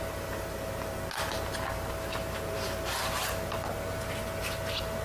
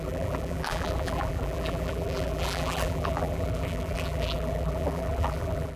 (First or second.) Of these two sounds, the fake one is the second